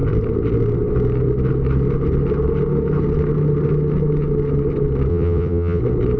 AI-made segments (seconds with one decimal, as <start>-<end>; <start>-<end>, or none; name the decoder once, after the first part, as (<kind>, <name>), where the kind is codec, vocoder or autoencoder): 5.1-5.8 (vocoder, WaveNeXt)